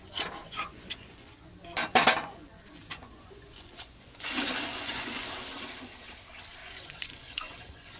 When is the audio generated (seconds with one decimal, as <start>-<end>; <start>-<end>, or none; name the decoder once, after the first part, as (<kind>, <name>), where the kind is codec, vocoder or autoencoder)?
0.4-1.5 (vocoder, Vocos); 2.2-5.3; 6.6-8.0